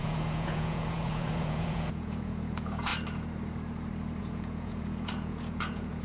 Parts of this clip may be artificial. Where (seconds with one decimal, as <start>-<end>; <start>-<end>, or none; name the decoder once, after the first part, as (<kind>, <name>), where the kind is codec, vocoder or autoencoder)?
0.0-2.9 (vocoder, Vocos); 4.2-6.0